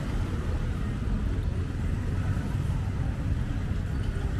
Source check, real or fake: real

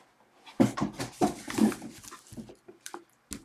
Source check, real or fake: real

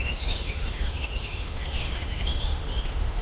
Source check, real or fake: fake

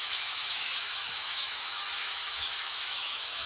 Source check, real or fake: fake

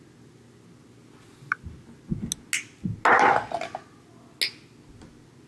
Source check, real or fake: real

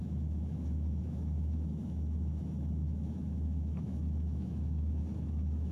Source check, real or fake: fake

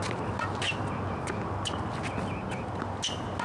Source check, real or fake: real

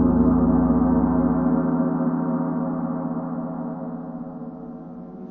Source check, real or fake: real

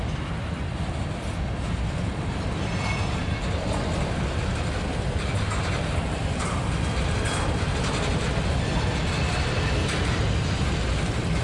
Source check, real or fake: real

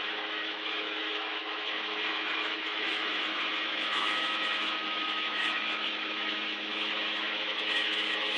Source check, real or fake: fake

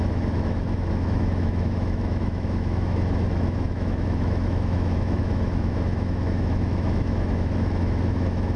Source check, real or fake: fake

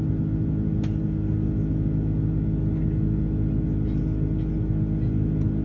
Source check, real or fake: real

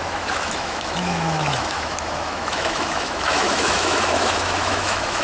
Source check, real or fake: fake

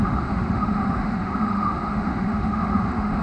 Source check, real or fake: fake